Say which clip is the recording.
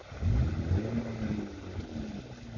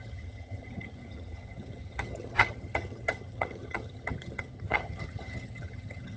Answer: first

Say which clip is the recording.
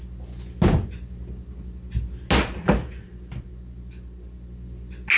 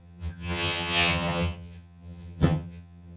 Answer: first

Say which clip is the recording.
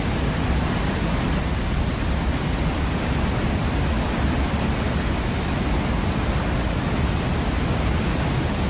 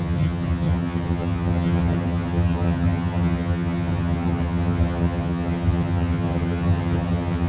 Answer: first